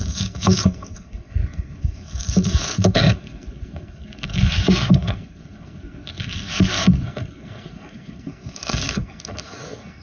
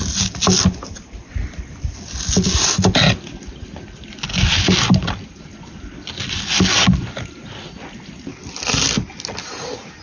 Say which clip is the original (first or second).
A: second